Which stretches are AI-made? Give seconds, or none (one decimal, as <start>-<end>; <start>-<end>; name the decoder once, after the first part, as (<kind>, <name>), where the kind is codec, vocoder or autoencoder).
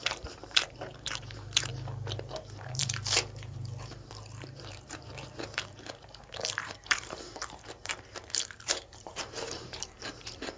0.0-1.7 (vocoder, BigVGAN v2); 2.4-10.6